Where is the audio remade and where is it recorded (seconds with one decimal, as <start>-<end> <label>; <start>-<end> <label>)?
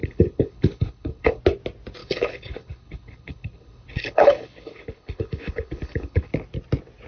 0.0-1.4 remade; 1.4-2.0 recorded; 2.0-6.3 remade; 6.3-7.1 recorded